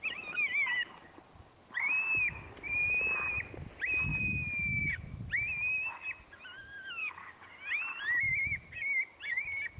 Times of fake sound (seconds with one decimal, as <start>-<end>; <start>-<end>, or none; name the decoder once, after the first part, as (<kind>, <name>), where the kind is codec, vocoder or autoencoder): 7.0-7.5 (codec, DAC)